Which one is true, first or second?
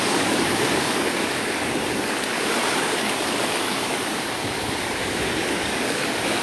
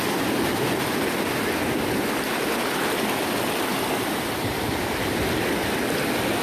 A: second